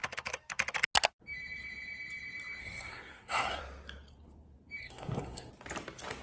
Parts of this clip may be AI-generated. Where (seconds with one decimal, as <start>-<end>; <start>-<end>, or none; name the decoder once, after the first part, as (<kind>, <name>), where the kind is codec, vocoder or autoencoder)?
2.6-3.6 (codec, SNAC); 4.8-5.5